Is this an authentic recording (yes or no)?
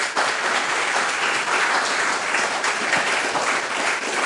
yes